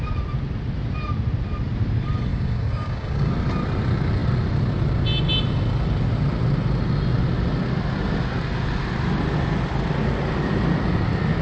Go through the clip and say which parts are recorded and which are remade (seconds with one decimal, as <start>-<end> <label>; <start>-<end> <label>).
0.0-2.3 recorded; 2.3-3.3 remade; 3.3-11.4 recorded